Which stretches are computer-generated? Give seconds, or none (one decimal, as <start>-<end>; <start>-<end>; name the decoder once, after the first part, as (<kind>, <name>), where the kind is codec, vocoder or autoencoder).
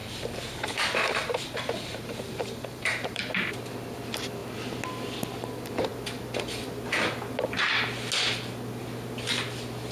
0.0-3.2 (vocoder, BigVGAN v2)